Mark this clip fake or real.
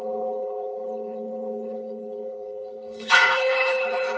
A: fake